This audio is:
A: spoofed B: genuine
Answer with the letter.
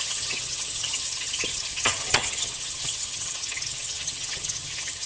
A